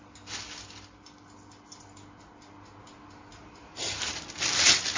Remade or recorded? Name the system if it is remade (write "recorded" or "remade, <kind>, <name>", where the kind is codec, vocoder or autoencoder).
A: recorded